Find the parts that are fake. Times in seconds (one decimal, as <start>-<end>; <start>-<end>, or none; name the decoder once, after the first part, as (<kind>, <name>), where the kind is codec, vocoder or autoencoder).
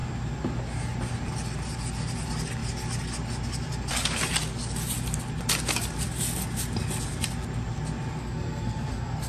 8.2-9.3 (codec, SNAC)